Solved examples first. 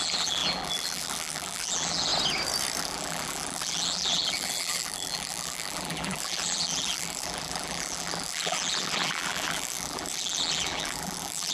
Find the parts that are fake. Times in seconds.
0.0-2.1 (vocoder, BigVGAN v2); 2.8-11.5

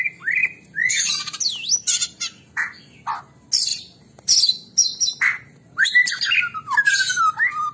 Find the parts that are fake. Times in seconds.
0.4-0.9 (vocoder, BigVGAN v2); 3.7-7.2

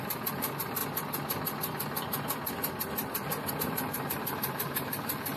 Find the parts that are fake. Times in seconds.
0.0-0.8 (vocoder, BigVGAN v2); 3.5-5.4

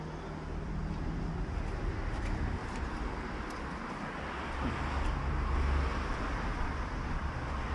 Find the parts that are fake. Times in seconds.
2.6-4.8 (vocoder, BigVGAN v2); 6.5-7.0

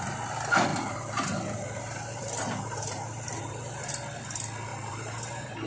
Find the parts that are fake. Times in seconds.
0.7-3.9 (vocoder, BigVGAN v2); 4.7-5.7

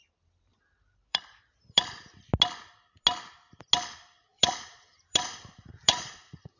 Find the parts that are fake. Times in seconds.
0.5-2.2 (vocoder, BigVGAN v2); 4.3-6.6